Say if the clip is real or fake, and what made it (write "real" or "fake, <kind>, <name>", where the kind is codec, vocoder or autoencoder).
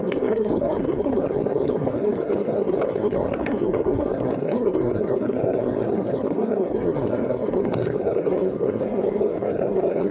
fake, codec, SNAC